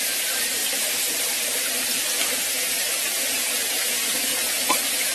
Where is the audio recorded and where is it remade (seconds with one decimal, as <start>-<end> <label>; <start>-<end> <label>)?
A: 0.0-4.3 recorded; 4.3-5.1 remade